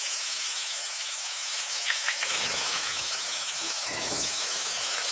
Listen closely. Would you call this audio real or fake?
fake